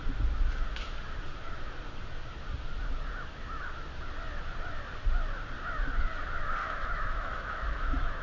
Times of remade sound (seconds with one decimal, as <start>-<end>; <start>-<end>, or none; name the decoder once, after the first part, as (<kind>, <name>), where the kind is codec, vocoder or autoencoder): 6.6-8.2 (autoencoder, DAC-VAE)